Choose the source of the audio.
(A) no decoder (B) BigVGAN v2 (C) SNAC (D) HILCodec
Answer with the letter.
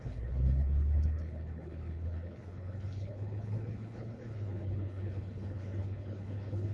D